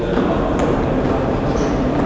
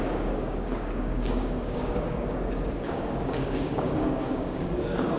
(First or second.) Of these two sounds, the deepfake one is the second